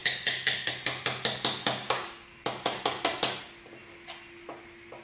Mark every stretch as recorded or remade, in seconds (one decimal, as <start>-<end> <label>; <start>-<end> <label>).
0.0-0.7 remade; 0.7-1.6 recorded; 1.6-2.3 remade; 2.3-5.0 recorded